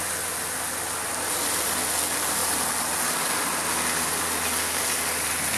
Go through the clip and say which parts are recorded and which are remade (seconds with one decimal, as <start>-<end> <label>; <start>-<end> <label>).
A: 0.0-5.6 recorded